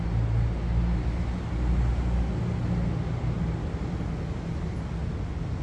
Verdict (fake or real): real